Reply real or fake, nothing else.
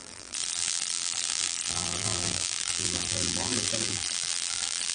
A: fake